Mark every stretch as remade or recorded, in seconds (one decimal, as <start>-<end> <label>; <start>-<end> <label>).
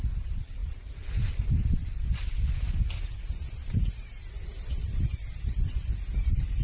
0.0-6.6 recorded